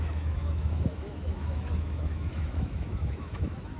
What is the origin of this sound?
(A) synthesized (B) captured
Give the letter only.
A